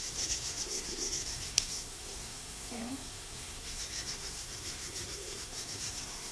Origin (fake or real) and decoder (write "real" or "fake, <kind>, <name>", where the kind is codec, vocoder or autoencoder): fake, codec, SNAC